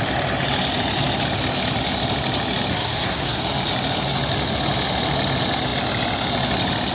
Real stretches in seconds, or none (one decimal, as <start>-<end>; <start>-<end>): 0.0-2.7; 3.4-6.9